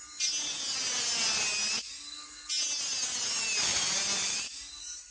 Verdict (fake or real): real